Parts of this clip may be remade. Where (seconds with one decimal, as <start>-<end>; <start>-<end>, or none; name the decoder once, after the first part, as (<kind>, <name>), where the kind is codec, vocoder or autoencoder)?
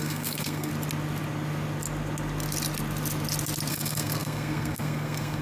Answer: 0.0-0.7 (codec, SNAC); 3.7-5.4